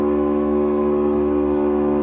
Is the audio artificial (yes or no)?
yes